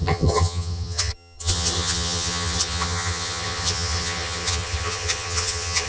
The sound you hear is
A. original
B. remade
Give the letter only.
B